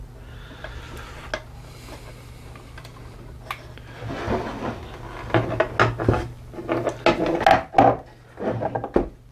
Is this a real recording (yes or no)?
yes